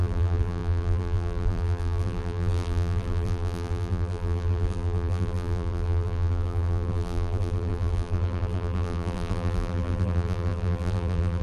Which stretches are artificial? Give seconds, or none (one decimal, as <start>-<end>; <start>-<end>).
0.0-11.4

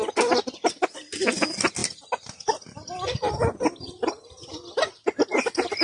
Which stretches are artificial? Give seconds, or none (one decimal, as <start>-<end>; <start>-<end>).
none